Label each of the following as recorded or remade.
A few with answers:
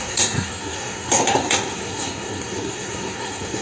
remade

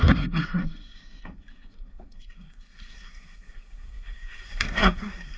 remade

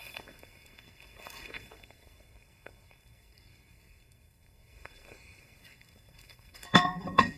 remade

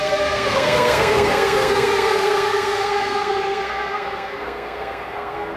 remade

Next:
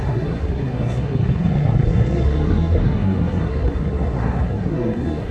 remade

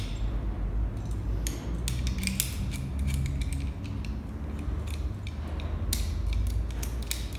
recorded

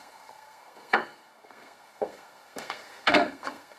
remade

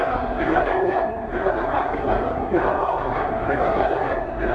remade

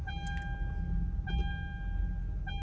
recorded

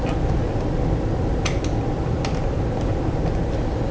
recorded